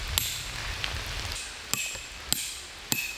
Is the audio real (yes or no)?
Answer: yes